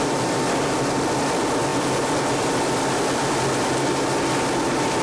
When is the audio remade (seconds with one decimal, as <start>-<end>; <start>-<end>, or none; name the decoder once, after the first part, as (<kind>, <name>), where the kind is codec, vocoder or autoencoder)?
none